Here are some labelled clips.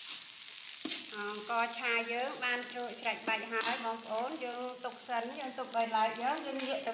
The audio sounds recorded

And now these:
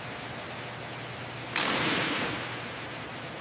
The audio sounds recorded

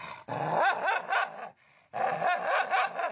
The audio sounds recorded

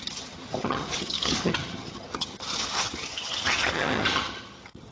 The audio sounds remade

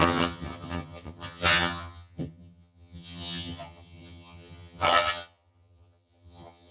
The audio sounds remade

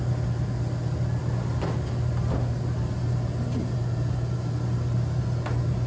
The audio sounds recorded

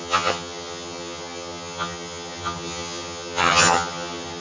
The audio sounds remade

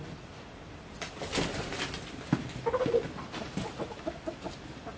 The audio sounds recorded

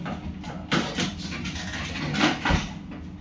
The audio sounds recorded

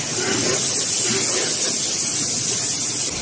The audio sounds recorded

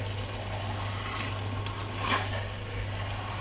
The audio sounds recorded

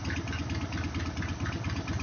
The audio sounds recorded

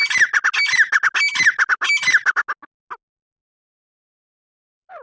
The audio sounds recorded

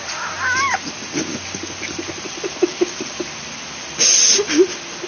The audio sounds recorded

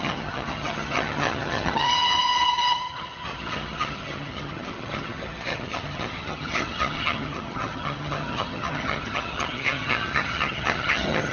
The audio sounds remade